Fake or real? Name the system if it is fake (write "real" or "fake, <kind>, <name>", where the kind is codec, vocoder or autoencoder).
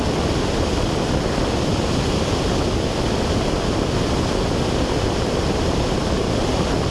real